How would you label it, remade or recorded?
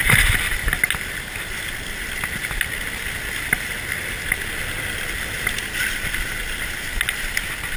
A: recorded